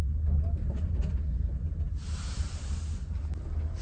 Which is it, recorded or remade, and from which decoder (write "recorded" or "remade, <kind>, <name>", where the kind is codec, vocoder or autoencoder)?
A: recorded